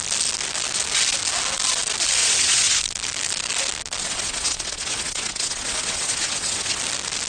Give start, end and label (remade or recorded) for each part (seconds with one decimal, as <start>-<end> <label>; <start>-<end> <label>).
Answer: 0.0-2.2 recorded; 2.2-2.8 remade; 2.8-4.0 recorded; 4.0-6.8 remade; 6.8-7.3 recorded